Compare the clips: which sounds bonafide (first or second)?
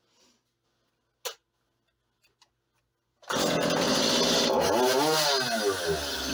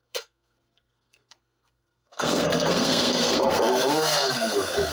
first